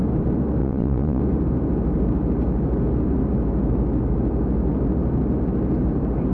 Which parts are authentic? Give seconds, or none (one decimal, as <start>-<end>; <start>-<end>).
0.0-0.6; 1.2-6.3